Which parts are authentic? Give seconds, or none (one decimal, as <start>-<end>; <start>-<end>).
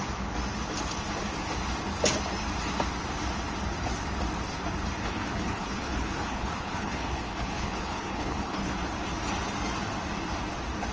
0.0-5.0; 8.7-10.9